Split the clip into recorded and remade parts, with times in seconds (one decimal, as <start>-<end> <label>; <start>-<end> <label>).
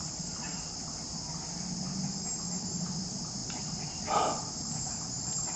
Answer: 0.0-0.8 remade; 0.8-5.6 recorded